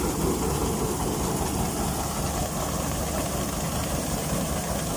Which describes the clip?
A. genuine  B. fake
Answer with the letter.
A